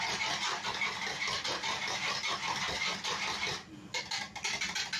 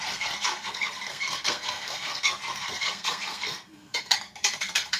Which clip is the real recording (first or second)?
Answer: first